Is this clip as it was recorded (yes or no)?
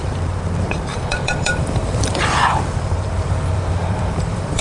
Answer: no